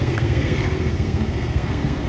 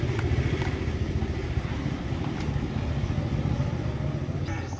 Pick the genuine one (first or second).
second